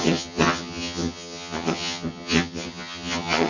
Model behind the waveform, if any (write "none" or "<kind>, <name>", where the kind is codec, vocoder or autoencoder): vocoder, HiFi-GAN